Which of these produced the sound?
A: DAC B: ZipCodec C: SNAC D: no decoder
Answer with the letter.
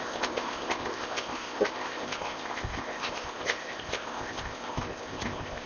B